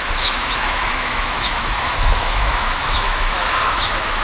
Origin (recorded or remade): remade